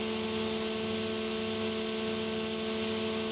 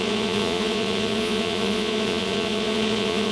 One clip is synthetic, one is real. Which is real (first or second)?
first